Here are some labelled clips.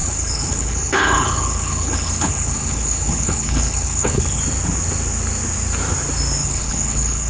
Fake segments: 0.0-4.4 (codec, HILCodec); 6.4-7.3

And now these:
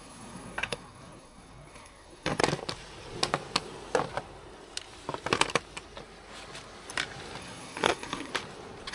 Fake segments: 0.0-2.4 (codec, SNAC); 7.4-8.3

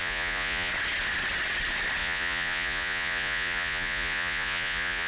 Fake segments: 0.0-0.7 (vocoder, Vocos); 2.0-5.1